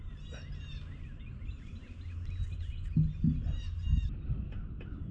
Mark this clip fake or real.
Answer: real